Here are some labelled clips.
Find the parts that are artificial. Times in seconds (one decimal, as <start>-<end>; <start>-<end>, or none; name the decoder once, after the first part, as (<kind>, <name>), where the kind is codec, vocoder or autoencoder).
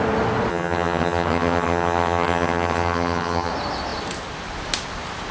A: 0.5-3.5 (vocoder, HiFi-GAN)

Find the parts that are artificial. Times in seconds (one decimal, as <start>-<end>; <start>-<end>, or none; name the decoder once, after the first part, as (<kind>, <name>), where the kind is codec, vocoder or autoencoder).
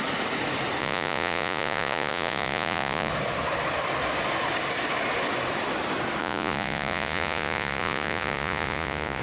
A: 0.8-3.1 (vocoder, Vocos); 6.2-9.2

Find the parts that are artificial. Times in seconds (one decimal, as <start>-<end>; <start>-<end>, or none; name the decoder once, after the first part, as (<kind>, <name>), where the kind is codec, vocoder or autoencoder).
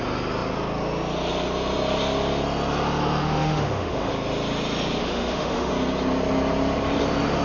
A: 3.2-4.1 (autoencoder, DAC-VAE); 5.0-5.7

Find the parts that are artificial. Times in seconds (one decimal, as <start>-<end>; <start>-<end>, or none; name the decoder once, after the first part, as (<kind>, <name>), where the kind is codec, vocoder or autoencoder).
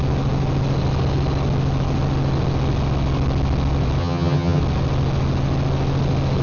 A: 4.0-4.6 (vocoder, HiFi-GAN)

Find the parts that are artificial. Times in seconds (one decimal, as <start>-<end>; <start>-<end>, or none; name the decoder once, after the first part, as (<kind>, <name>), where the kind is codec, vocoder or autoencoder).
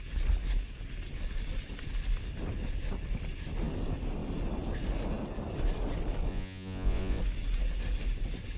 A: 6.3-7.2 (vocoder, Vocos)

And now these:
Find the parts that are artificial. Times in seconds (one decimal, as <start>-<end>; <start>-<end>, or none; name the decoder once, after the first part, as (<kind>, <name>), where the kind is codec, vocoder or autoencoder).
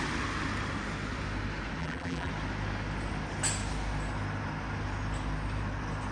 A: 1.8-2.3 (vocoder, BigVGAN v2)